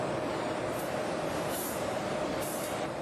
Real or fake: fake